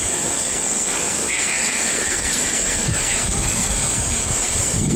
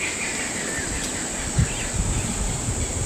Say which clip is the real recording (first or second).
second